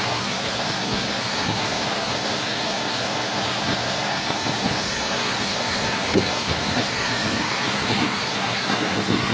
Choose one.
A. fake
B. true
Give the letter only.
A